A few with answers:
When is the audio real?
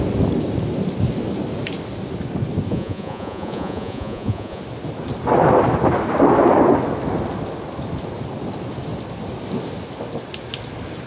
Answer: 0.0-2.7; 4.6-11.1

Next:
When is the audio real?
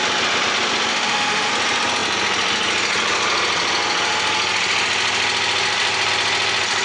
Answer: 0.0-0.9; 1.5-6.8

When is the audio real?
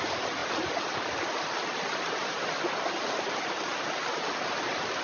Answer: 0.0-5.0